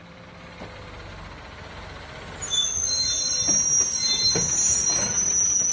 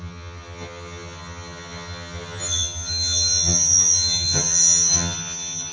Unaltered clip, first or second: first